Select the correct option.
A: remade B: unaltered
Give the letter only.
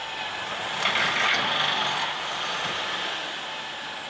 B